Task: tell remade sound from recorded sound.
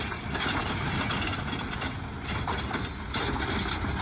recorded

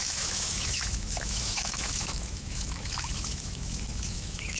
remade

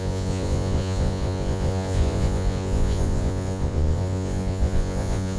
remade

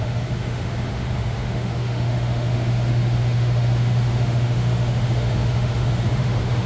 remade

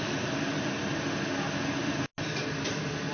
recorded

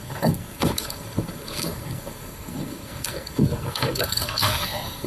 remade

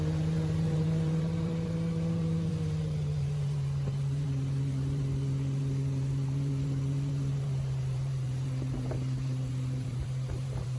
remade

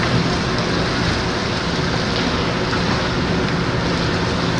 recorded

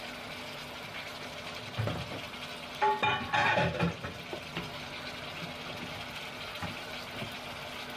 recorded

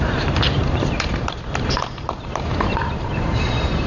remade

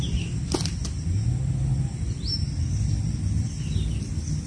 recorded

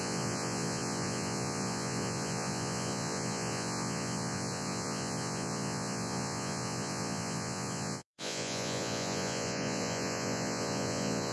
remade